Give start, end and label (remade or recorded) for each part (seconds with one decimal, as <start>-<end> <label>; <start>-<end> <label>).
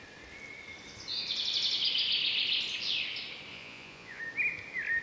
0.0-3.5 recorded; 3.5-4.2 remade; 4.2-5.0 recorded